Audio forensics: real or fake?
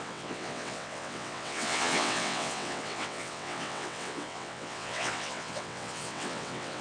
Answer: fake